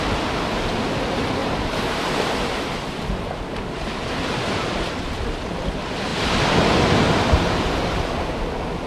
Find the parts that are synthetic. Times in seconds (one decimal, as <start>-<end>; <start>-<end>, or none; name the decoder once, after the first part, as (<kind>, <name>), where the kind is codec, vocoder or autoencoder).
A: 1.4-2.1 (vocoder, BigVGAN v2)